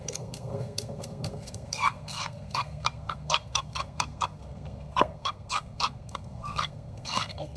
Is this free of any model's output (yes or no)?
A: no